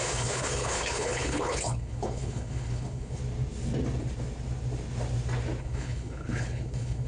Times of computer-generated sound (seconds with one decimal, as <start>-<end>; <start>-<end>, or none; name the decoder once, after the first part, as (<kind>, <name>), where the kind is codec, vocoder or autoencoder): 0.0-3.2 (codec, HILCodec); 5.6-7.1